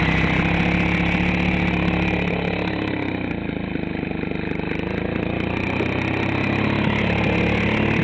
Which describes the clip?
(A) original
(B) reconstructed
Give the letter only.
A